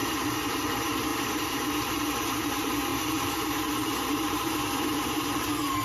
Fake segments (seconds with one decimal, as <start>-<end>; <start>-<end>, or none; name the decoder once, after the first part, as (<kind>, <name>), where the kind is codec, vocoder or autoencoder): 0.6-5.8 (vocoder, BigVGAN v2)